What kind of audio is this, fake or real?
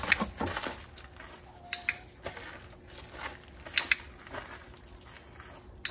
real